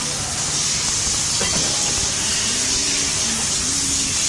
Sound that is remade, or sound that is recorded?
recorded